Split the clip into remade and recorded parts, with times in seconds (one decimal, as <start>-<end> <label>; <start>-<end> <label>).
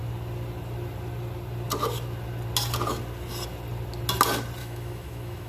0.0-4.6 recorded; 4.6-5.5 remade